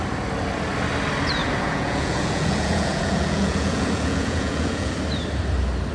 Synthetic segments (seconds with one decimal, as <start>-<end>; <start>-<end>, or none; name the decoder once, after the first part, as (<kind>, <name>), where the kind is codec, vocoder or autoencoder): 1.4-4.9 (vocoder, Vocos)